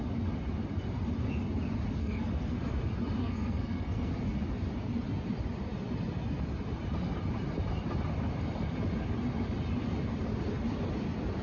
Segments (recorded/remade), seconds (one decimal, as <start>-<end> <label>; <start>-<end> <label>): 0.0-2.0 recorded; 2.0-2.6 remade; 2.6-3.2 recorded; 3.2-4.1 remade; 4.1-11.4 recorded